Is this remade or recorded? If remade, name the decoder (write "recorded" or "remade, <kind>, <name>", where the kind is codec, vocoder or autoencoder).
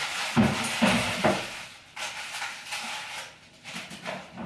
recorded